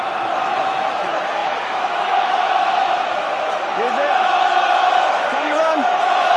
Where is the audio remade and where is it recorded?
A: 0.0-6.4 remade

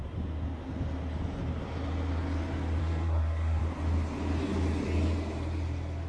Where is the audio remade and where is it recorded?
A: 0.0-2.8 recorded; 2.8-3.6 remade; 3.6-6.1 recorded

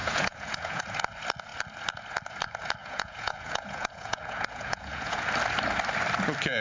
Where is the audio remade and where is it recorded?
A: 0.0-0.8 remade; 0.8-2.8 recorded; 2.8-5.2 remade; 5.2-6.6 recorded

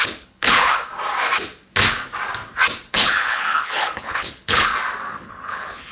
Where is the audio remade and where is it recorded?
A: 0.0-0.9 remade; 0.9-2.9 recorded; 2.9-4.7 remade; 4.7-5.2 recorded; 5.2-5.9 remade

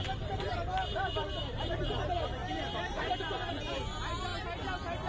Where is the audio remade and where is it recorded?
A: 0.0-0.5 remade; 0.5-1.4 recorded; 1.4-2.4 remade; 2.4-3.0 recorded; 3.0-4.3 remade; 4.3-5.1 recorded

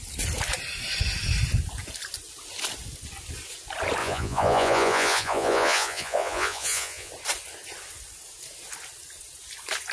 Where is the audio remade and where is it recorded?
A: 0.0-4.0 recorded; 4.0-7.1 remade; 7.1-9.9 recorded

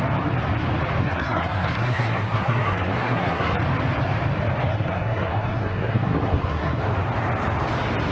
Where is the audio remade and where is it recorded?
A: 0.0-1.0 recorded; 1.0-3.6 remade; 3.6-4.7 recorded; 4.7-6.8 remade; 6.8-8.1 recorded